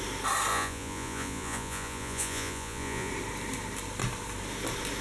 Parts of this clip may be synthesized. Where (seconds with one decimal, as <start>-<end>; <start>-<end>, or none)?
0.5-3.1